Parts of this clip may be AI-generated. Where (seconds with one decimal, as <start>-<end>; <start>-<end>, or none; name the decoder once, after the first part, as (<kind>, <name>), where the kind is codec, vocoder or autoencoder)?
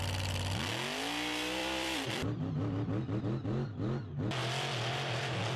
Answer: 1.6-3.2 (vocoder, BigVGAN v2); 4.4-5.6